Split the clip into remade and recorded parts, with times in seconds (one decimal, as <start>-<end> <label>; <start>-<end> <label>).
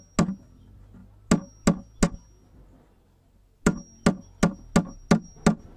0.0-5.8 recorded